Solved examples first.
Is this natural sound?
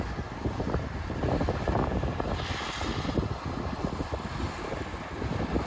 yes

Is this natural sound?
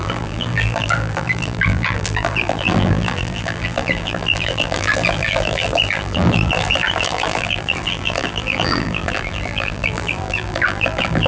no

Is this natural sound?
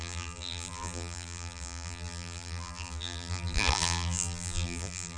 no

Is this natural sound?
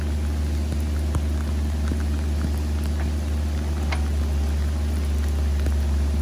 yes